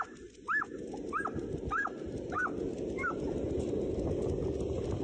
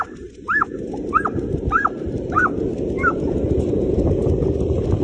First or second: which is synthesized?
second